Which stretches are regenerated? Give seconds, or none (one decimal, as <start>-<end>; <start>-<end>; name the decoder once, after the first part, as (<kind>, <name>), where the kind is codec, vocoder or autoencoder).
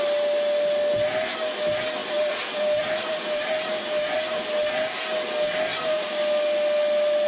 2.0-4.5 (vocoder, BigVGAN v2); 5.7-6.2